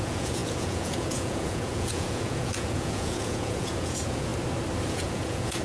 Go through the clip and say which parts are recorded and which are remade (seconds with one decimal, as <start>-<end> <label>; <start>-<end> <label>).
0.0-4.3 remade; 4.3-4.9 recorded; 4.9-5.6 remade